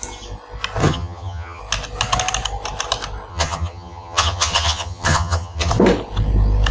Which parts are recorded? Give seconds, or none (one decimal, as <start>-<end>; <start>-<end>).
0.0-0.8; 1.6-3.3; 5.7-6.7